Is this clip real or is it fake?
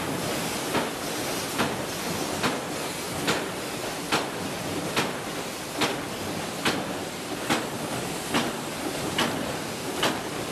real